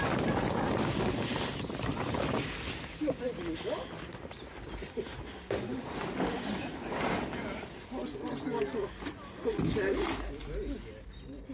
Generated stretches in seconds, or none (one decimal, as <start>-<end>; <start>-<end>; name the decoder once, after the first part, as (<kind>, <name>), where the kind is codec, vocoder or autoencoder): none